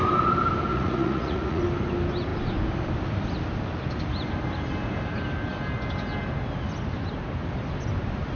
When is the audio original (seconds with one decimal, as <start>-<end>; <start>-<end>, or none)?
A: 0.0-0.7; 1.6-8.4